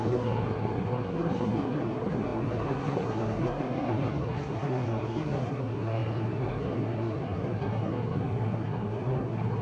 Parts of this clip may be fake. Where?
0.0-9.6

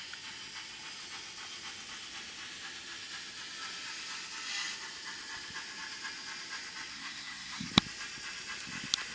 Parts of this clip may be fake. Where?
6.9-7.7

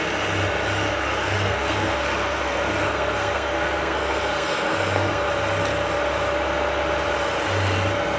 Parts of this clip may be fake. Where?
0.9-5.3

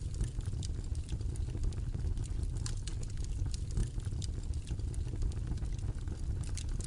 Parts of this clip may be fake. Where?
none

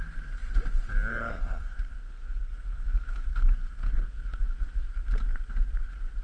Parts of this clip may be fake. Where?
1.1-4.4

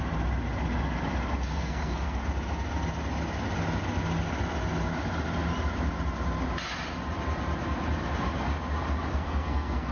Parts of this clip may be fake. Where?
1.6-2.2; 9.1-9.9

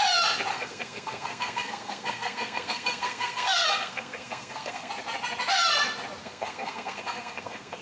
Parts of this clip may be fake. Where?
0.5-4.9; 6.2-7.8